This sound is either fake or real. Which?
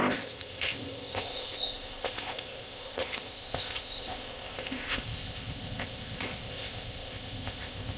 fake